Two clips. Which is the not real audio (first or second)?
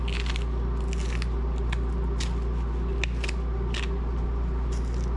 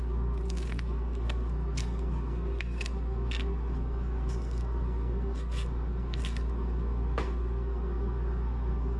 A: second